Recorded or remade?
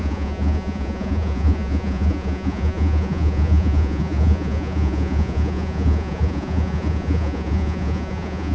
remade